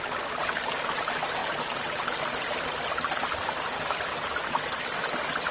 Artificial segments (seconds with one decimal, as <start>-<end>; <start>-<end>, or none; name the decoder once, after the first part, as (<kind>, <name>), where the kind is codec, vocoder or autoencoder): none